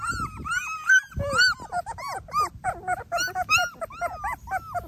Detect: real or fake real